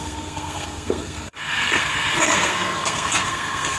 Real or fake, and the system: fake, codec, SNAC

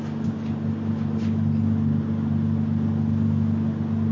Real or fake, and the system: real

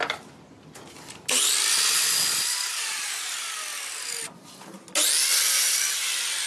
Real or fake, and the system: real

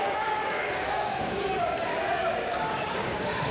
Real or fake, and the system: fake, codec, DAC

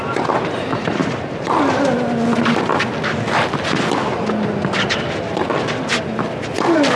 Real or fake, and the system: real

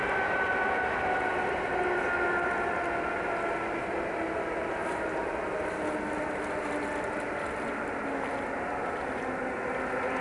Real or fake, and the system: real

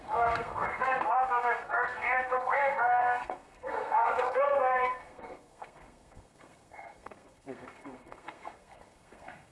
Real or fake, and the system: fake, codec, SNAC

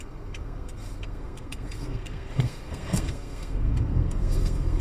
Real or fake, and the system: fake, codec, SNAC